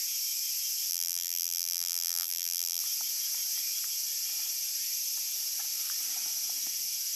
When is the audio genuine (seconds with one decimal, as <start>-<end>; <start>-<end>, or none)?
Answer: 0.0-0.9; 2.8-7.2